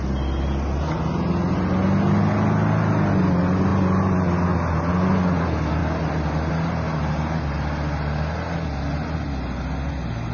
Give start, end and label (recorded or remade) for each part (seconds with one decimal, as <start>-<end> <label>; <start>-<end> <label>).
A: 0.0-10.3 recorded